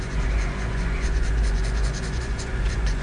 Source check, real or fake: fake